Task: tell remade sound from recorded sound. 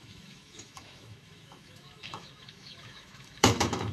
remade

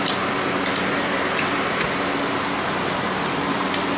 recorded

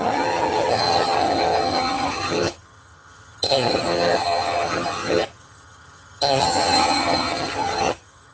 remade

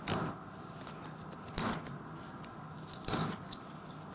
recorded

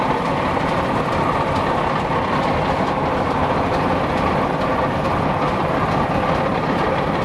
recorded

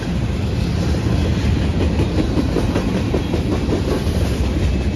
recorded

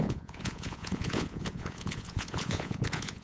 remade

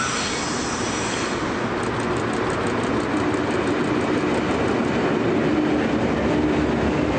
recorded